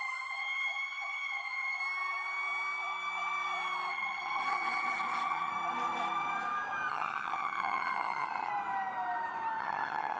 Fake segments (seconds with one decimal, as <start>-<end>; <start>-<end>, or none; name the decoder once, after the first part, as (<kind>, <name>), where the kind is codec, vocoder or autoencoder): 0.0-1.8 (vocoder, HiFi-GAN); 3.9-5.5; 6.9-8.5; 9.6-10.2

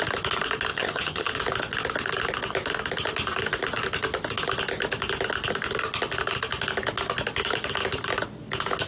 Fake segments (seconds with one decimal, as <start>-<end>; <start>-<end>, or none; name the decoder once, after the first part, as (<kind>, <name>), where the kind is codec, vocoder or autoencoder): 0.7-1.3 (vocoder, HiFi-GAN)

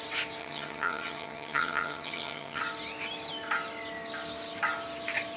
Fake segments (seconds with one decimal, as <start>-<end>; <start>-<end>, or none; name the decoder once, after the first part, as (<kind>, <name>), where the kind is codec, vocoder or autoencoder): 0.4-2.6 (vocoder, HiFi-GAN)

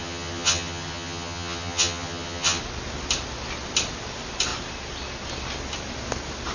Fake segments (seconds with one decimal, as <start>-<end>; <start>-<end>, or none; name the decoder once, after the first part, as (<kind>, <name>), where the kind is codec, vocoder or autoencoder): 0.0-2.6 (vocoder, HiFi-GAN)

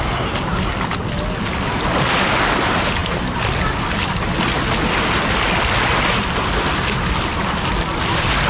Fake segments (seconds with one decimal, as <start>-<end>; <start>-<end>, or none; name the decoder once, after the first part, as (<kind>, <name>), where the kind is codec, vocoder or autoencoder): none